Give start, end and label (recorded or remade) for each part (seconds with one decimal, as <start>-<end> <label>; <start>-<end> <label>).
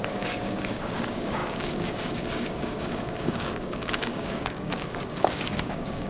0.0-6.1 remade